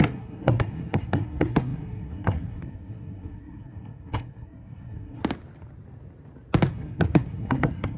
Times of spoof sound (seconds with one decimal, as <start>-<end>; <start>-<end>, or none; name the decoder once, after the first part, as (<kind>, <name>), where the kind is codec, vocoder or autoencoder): 0.0-5.2 (codec, SNAC); 6.7-8.0